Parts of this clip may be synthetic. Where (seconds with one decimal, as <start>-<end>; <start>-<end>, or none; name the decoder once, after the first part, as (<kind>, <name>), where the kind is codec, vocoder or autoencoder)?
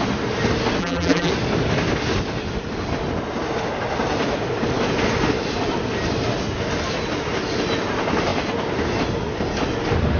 0.8-1.3 (vocoder, BigVGAN v2)